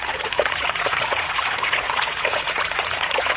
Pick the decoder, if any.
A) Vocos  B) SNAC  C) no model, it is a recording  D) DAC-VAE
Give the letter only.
A